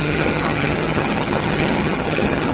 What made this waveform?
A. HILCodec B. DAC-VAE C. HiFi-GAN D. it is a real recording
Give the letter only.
C